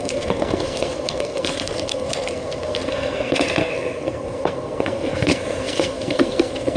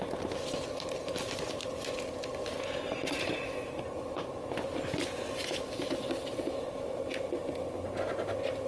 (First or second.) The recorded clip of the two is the second